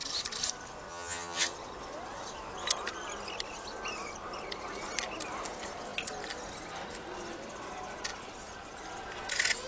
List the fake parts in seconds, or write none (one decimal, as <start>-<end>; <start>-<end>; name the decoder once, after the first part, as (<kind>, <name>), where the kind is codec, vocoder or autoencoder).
0.9-1.5 (vocoder, HiFi-GAN)